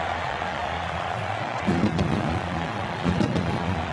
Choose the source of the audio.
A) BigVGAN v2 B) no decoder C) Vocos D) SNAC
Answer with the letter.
C